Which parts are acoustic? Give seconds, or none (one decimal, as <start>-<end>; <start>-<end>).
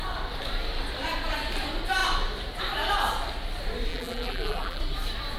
0.0-3.9; 4.8-5.4